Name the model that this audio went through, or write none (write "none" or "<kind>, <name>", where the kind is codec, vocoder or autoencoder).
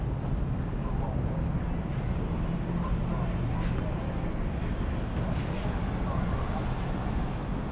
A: none